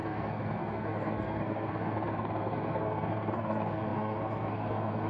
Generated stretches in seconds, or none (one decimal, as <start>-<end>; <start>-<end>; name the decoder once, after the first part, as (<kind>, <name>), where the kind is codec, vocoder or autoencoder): 0.0-5.1 (codec, SNAC)